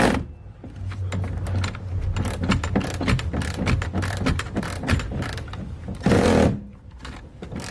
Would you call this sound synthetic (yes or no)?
no